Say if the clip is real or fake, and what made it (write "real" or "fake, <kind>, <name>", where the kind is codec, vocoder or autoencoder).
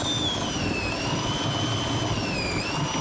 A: real